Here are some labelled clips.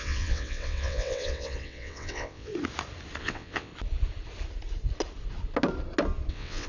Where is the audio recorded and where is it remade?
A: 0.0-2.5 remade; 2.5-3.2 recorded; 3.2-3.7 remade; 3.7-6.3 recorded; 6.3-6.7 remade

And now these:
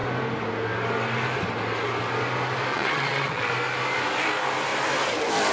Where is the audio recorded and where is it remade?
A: 0.0-2.7 recorded; 2.7-3.5 remade; 3.5-5.5 recorded

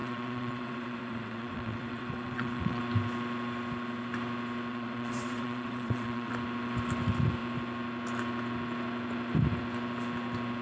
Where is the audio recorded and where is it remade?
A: 0.0-2.8 remade; 2.8-4.7 recorded; 4.7-6.3 remade; 6.3-10.6 recorded